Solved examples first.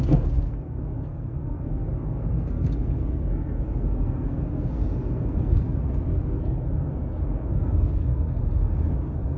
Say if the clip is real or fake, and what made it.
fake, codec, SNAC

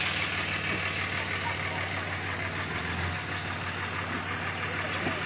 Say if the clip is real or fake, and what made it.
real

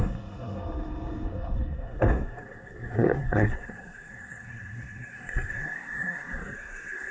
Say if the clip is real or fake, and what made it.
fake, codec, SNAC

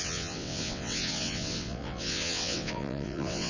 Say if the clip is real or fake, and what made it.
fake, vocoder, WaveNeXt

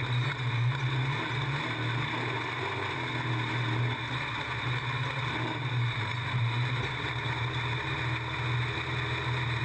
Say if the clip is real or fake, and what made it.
real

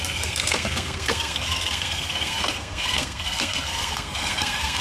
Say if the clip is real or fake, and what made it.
fake, codec, SNAC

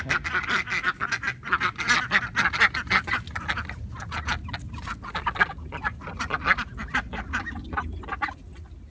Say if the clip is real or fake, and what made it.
real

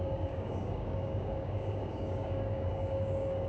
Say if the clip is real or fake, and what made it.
fake, codec, DAC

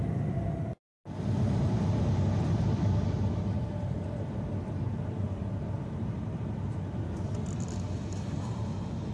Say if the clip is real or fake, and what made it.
real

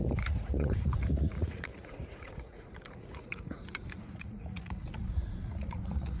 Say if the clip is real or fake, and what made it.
fake, vocoder, Vocos